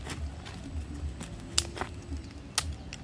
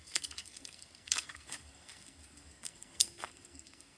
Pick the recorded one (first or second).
first